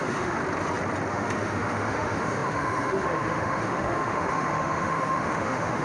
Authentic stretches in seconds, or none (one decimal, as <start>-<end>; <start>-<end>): 0.4-1.1